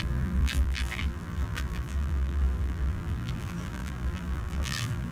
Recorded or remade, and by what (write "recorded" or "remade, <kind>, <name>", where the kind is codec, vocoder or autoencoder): remade, vocoder, BigVGAN v2